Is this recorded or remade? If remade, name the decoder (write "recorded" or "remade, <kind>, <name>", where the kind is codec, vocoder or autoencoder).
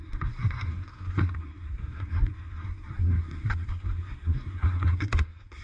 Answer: remade, codec, SNAC